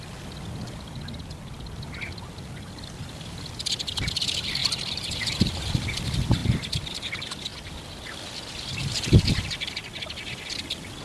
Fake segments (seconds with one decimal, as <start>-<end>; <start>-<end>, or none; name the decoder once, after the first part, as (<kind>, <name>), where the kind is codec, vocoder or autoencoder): 0.0-7.5 (vocoder, BigVGAN v2); 8.4-11.0